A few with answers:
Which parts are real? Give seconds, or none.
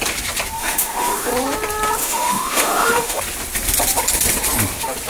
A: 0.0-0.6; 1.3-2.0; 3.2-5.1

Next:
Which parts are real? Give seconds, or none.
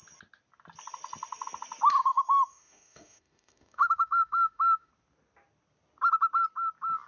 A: 0.0-2.1; 4.9-7.1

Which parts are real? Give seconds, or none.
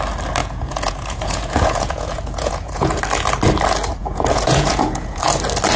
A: 0.0-0.4; 3.0-4.0; 5.2-5.8